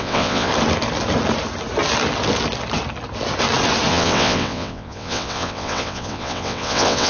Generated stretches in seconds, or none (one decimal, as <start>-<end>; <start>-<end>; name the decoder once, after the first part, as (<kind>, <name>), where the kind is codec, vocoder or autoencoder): 0.0-0.5 (vocoder, WaveNeXt); 3.9-7.1